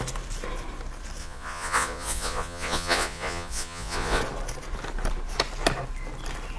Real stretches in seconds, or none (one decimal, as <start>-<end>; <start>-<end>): 0.0-1.2; 4.2-6.6